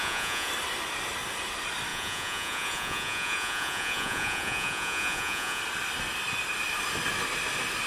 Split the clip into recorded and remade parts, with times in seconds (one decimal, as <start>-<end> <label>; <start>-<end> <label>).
0.0-0.5 remade; 0.5-1.9 recorded; 1.9-5.6 remade; 5.6-7.9 recorded